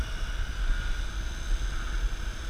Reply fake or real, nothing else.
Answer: real